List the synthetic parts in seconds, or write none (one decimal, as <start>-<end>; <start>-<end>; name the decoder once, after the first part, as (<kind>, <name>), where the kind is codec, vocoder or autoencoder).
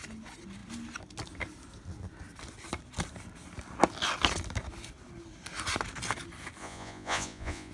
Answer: 6.6-7.7 (vocoder, Vocos)